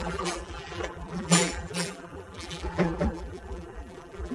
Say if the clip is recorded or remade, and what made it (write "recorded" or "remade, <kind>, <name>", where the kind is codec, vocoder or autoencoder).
remade, vocoder, BigVGAN v2